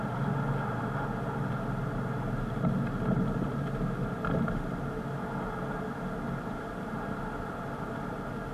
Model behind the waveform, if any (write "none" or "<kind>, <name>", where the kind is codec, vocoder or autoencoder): none